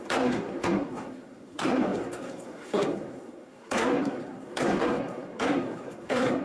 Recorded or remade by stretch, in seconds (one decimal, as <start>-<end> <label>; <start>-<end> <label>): 0.0-6.4 remade